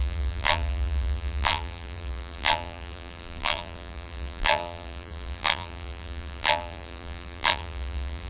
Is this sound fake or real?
fake